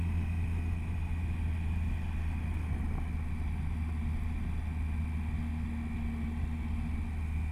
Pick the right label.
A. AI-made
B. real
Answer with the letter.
B